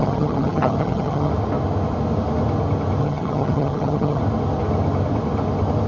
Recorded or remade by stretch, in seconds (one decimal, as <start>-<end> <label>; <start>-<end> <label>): 0.0-1.3 remade; 1.3-3.0 recorded; 3.0-4.2 remade; 4.2-5.9 recorded